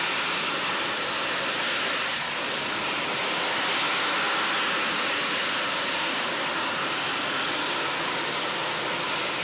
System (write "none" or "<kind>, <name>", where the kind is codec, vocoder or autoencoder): none